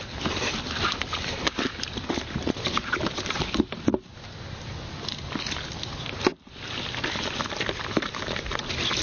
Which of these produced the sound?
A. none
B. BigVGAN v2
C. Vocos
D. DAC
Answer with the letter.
A